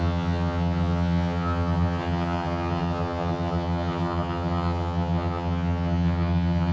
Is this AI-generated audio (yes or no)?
yes